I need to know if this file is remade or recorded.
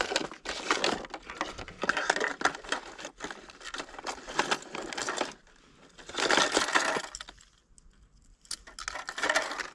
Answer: recorded